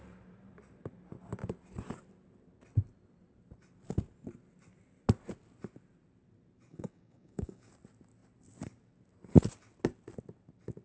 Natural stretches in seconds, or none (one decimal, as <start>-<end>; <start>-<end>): 0.0-6.7; 7.7-10.8